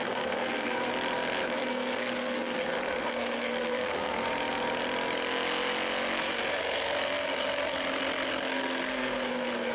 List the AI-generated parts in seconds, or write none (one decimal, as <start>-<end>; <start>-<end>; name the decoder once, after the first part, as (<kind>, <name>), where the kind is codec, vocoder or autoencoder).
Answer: 0.0-0.9 (codec, SNAC); 1.7-4.2; 6.2-9.7